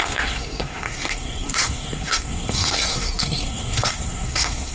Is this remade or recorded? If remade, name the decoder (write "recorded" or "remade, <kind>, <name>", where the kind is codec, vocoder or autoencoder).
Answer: remade, codec, SNAC